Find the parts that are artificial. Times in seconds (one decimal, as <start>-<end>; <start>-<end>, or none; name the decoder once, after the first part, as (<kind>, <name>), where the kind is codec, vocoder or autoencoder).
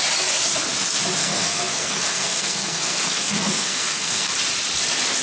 1.2-4.3 (codec, SNAC)